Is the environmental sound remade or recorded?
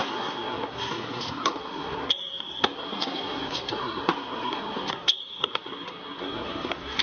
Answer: remade